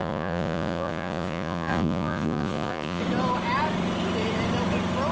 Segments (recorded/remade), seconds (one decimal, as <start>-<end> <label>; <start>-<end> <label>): 0.0-3.0 remade; 3.0-5.1 recorded